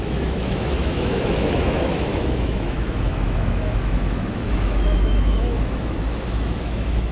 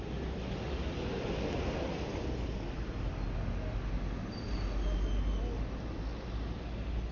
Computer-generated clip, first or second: first